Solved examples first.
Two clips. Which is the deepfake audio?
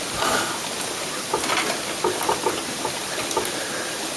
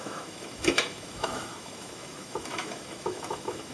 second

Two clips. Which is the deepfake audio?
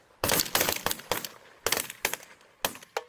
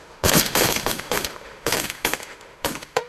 second